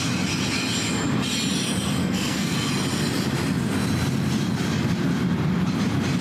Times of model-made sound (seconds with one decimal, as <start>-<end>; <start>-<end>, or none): 2.0-2.7